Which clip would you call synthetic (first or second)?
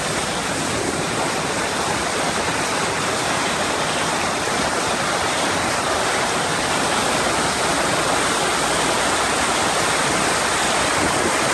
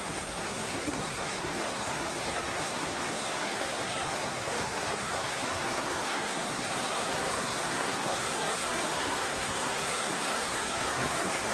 second